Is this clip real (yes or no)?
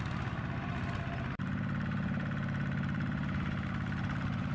yes